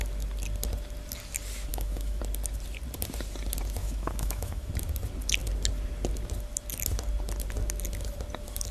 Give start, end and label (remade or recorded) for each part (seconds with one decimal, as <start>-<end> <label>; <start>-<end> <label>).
0.0-1.7 recorded; 1.7-2.2 remade; 2.2-3.8 recorded; 3.8-4.7 remade; 4.7-8.7 recorded